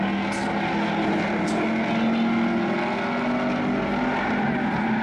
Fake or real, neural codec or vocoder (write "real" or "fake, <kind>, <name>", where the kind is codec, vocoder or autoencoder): real